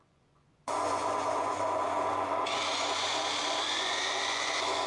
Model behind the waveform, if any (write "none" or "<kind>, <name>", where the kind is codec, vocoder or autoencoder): vocoder, Vocos